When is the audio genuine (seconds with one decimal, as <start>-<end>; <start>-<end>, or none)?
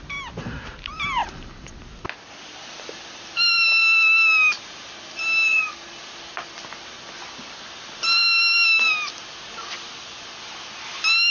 0.0-5.5; 7.7-11.3